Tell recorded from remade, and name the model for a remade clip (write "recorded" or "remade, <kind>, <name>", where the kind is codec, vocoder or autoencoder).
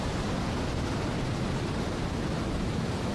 recorded